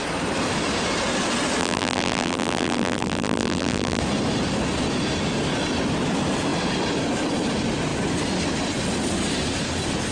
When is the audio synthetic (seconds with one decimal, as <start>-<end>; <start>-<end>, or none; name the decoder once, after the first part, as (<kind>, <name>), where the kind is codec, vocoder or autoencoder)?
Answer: 1.6-4.0 (vocoder, BigVGAN v2)